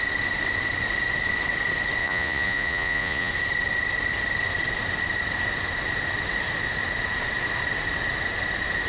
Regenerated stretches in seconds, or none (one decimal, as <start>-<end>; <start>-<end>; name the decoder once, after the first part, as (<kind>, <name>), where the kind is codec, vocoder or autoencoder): 2.0-3.3 (vocoder, Vocos)